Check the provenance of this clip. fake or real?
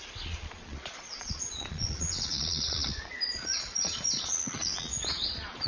fake